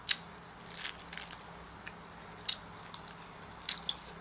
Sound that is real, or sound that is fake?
real